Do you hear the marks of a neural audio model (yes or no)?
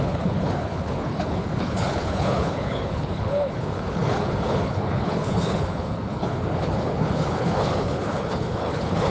yes